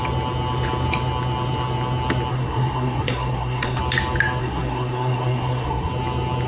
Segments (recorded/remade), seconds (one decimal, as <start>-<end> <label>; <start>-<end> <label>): 0.0-2.3 recorded; 2.3-3.8 remade; 3.8-4.4 recorded; 4.4-5.9 remade; 5.9-6.5 recorded